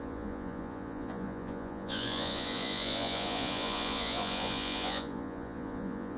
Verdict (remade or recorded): remade